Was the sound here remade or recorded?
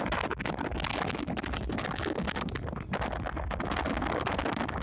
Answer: recorded